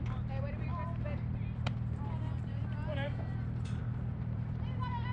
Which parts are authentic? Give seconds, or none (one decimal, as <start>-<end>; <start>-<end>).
none